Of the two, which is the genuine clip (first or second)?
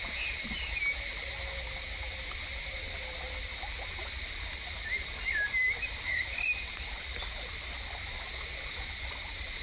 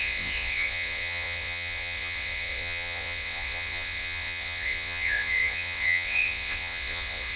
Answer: first